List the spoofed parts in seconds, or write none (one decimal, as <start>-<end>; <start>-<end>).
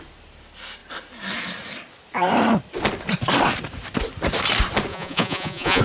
4.9-5.8